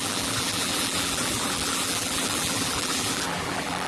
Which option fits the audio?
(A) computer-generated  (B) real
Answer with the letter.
A